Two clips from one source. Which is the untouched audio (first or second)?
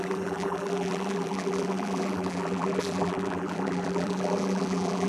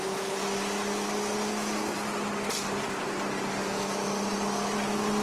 second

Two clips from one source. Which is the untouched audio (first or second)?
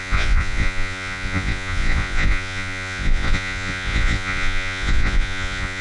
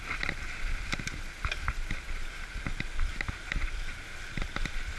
second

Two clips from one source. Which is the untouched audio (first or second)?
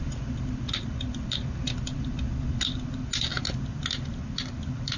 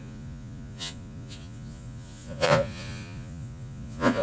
first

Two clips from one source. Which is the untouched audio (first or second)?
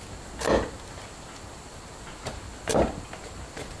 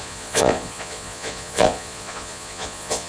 first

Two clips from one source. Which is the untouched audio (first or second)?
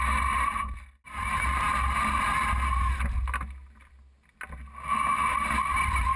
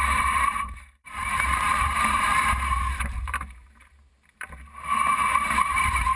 first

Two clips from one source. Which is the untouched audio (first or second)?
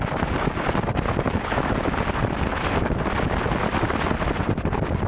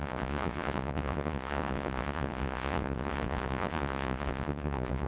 first